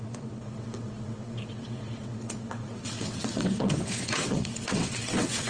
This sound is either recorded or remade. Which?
remade